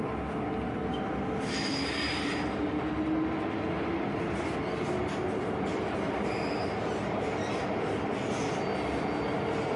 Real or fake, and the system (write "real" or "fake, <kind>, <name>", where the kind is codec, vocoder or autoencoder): real